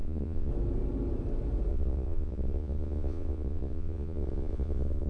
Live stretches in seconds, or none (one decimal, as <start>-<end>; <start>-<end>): 0.5-1.7